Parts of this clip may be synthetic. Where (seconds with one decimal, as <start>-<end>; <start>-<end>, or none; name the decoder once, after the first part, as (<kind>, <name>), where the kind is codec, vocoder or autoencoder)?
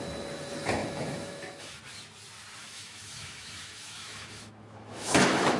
0.8-1.8 (autoencoder, DAC-VAE); 2.6-5.6